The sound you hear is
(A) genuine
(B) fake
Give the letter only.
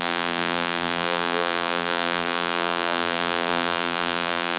B